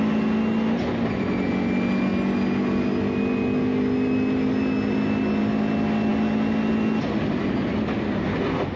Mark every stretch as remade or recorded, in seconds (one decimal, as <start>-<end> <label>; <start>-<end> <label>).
0.0-8.8 recorded